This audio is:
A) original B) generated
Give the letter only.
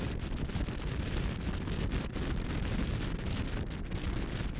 A